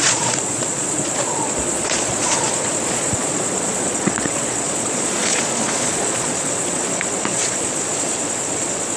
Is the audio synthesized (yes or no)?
yes